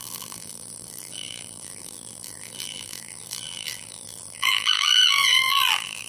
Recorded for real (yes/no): no